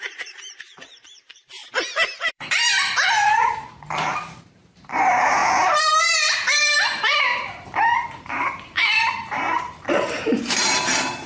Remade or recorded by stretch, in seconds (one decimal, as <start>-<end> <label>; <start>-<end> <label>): 0.0-1.6 remade; 1.6-2.3 recorded; 2.3-11.3 remade

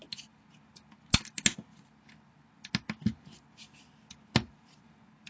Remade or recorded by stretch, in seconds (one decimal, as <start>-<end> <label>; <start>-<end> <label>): 0.0-5.3 recorded